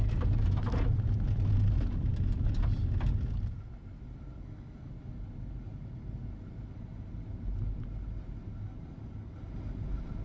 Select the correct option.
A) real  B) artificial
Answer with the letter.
A